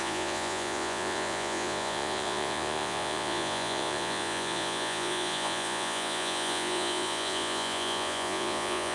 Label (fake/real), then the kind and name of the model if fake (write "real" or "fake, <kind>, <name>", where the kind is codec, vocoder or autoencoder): fake, vocoder, Vocos